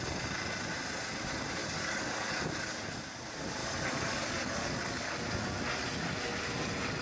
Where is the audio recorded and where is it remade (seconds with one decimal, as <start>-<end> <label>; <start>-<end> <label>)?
0.0-1.6 recorded; 1.6-2.3 remade; 2.3-3.6 recorded; 3.6-5.2 remade; 5.2-7.0 recorded